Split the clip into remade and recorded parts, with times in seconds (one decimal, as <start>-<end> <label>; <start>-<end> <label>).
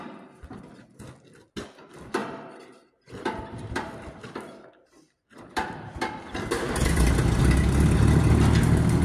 0.0-2.2 recorded; 2.2-7.1 remade; 7.1-9.0 recorded